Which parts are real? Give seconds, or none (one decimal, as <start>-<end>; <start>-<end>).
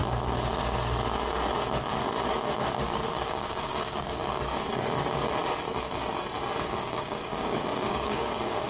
0.0-3.1; 4.2-6.6